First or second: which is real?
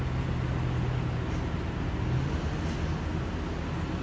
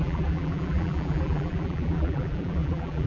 first